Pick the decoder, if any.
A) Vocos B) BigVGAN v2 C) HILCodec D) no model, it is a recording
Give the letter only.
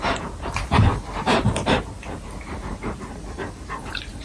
B